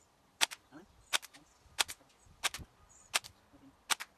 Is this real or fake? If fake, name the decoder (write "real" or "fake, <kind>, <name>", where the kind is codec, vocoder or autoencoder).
real